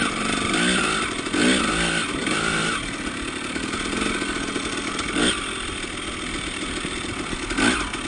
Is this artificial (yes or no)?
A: no